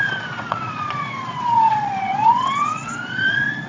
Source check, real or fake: fake